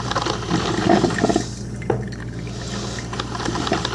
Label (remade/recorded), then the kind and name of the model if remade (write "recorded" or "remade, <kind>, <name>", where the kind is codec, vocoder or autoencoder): recorded